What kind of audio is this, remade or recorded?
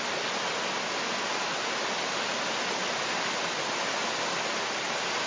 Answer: recorded